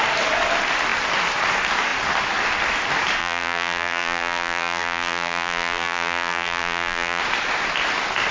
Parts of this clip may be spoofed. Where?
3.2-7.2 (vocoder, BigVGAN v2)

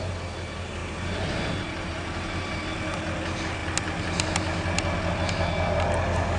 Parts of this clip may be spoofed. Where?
0.8-2.6 (vocoder, BigVGAN v2)

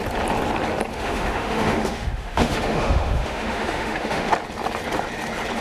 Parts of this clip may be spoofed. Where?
0.9-4.3 (autoencoder, DAC-VAE)

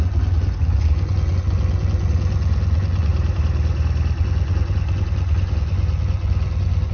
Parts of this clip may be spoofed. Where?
0.0-3.1 (vocoder, Vocos); 4.2-6.9